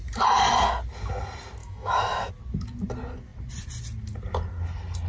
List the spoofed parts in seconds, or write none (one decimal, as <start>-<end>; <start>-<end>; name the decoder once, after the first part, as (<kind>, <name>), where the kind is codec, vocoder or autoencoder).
1.6-2.3 (autoencoder, DAC-VAE)